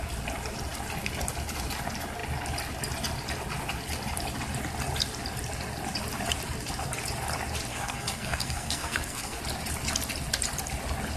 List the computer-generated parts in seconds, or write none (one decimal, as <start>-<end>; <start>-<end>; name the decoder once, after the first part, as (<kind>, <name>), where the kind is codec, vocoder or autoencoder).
7.7-9.4 (codec, SNAC)